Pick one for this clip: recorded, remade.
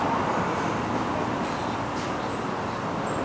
recorded